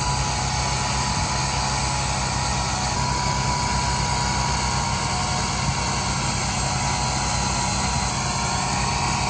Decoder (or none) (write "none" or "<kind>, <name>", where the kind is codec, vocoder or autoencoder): none